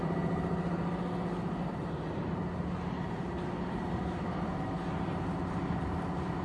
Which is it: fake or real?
real